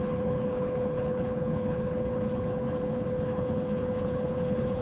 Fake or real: fake